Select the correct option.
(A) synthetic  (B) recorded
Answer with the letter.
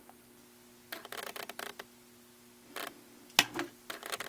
B